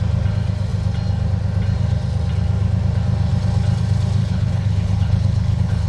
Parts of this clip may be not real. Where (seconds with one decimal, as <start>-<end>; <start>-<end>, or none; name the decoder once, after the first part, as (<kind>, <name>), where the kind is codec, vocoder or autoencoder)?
4.2-5.9 (codec, HILCodec)